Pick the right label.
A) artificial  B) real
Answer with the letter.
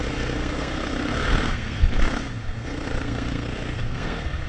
A